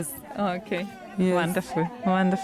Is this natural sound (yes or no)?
yes